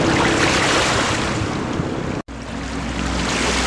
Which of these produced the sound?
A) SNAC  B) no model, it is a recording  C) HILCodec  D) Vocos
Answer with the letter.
B